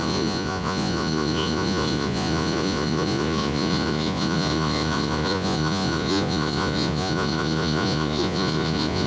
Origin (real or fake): fake